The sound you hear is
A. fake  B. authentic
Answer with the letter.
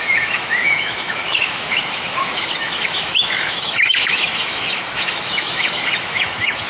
A